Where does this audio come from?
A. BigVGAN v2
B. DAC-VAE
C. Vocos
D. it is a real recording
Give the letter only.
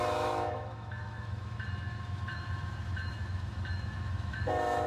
B